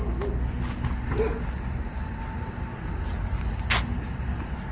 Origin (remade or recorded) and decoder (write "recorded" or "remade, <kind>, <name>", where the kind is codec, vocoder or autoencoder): recorded